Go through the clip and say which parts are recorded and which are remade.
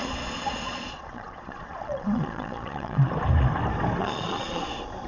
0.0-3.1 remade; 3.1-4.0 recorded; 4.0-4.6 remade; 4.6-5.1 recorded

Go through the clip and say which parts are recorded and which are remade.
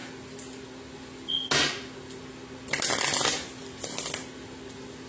0.0-5.1 recorded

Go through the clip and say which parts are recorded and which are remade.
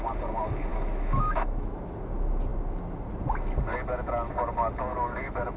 0.0-0.7 recorded; 0.7-1.7 remade; 1.7-4.9 recorded; 4.9-5.6 remade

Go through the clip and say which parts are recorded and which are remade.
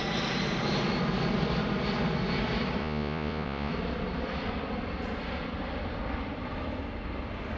0.0-2.8 recorded; 2.8-3.7 remade; 3.7-7.6 recorded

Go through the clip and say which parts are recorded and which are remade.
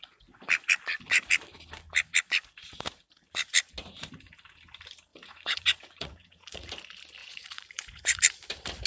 0.0-5.1 recorded; 5.1-6.7 remade; 6.7-7.2 recorded; 7.2-8.2 remade; 8.2-8.9 recorded